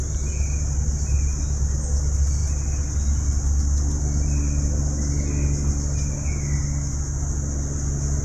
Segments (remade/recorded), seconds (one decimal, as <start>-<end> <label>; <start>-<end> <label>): 0.0-8.2 recorded